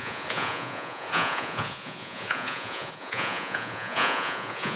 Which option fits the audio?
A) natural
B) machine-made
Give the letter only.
B